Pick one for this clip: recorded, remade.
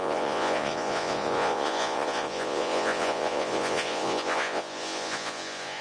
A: remade